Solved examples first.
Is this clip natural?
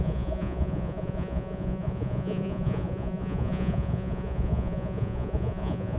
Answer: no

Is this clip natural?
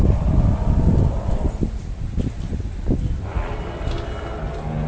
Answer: yes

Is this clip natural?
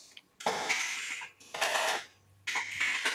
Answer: yes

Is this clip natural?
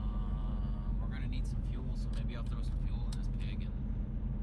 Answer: no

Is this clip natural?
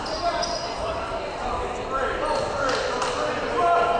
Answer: yes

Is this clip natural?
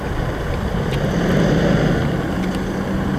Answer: yes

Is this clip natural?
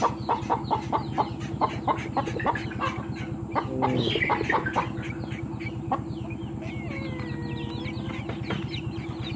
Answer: yes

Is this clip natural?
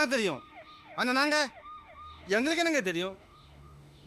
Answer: no